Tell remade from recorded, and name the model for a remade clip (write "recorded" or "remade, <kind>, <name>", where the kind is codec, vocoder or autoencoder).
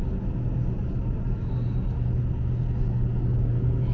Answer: recorded